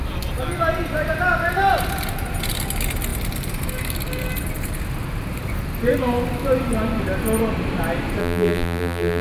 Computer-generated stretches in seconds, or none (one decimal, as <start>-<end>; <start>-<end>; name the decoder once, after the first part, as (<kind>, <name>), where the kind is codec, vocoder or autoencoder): 8.2-9.2 (vocoder, BigVGAN v2)